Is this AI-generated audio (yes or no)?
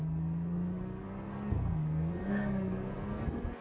yes